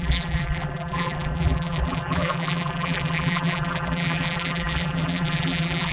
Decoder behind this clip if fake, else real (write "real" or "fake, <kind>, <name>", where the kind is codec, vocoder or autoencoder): fake, vocoder, BigVGAN v2